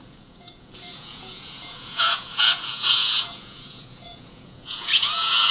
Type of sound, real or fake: fake